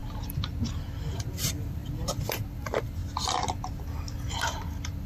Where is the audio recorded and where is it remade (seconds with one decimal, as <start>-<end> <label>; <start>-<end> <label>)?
0.0-1.2 recorded; 1.2-3.0 remade; 3.0-3.8 recorded; 3.8-5.1 remade